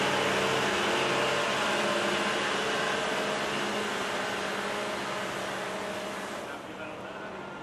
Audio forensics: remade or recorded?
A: recorded